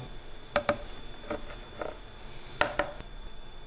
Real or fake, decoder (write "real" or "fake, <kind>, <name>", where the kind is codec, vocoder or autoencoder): real